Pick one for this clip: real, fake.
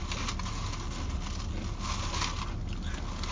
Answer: real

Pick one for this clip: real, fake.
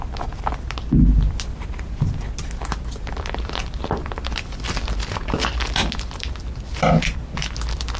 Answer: real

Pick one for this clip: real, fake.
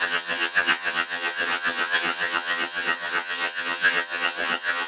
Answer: fake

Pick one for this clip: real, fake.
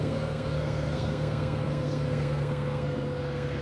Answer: fake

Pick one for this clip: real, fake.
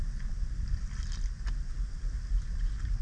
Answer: real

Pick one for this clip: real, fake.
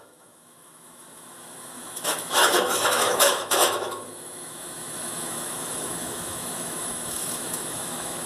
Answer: fake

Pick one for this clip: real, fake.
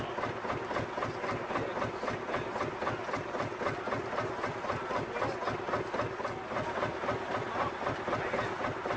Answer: real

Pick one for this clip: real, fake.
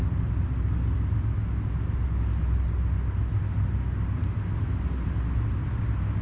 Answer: real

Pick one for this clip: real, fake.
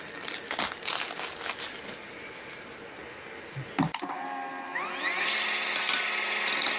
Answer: real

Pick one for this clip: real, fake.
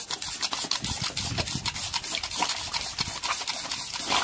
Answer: real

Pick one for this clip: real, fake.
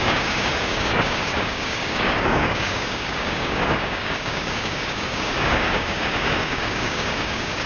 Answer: fake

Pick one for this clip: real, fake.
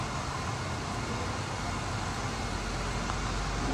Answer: real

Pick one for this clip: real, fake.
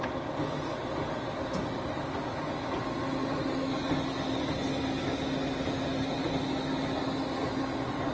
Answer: real